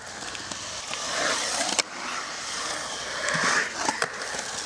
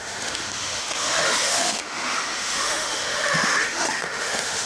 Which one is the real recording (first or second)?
first